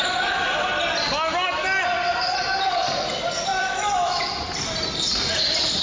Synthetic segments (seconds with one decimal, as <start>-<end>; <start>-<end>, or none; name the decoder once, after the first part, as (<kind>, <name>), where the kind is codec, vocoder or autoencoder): 3.5-4.2 (autoencoder, DAC-VAE)